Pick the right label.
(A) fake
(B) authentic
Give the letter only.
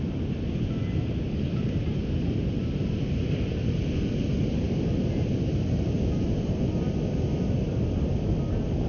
B